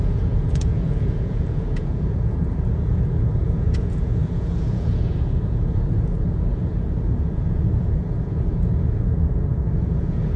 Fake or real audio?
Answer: fake